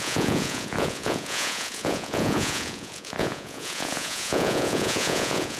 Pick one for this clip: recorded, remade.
remade